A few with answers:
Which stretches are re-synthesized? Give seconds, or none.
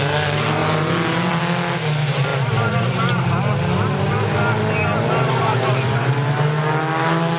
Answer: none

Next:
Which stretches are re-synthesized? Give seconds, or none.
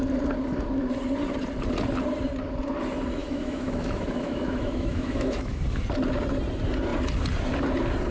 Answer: 3.2-5.6 (autoencoder, DAC-VAE)